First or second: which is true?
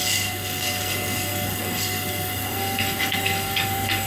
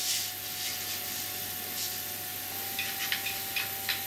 second